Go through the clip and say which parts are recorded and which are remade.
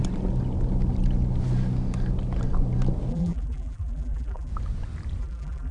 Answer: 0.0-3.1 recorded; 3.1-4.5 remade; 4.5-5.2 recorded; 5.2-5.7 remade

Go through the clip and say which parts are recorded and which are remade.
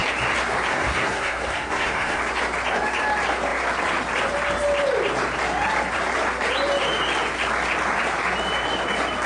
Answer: 0.0-0.7 recorded; 0.7-2.2 remade; 2.2-9.3 recorded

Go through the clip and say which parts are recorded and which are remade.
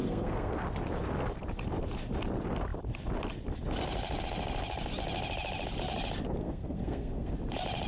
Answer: 0.0-0.5 remade; 0.5-6.4 recorded; 6.4-7.3 remade; 7.3-7.9 recorded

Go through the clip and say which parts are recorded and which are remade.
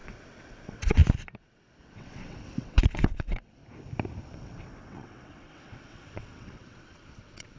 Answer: 0.0-1.0 remade; 1.0-1.8 recorded; 1.8-3.6 remade; 3.6-4.2 recorded; 4.2-7.6 remade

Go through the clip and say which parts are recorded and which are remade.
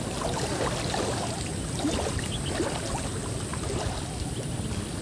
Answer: 0.0-5.0 recorded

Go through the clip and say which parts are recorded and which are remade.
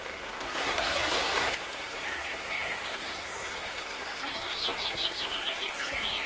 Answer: 0.0-6.3 remade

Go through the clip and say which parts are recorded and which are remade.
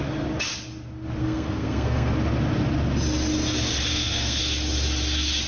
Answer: 0.0-1.2 recorded; 1.2-2.1 remade; 2.1-3.9 recorded; 3.9-4.4 remade; 4.4-5.5 recorded